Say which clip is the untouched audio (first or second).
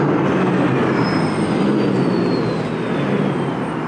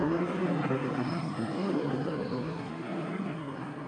first